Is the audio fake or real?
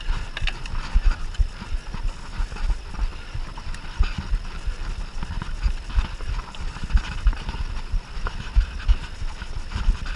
real